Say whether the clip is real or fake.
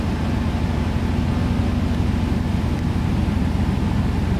real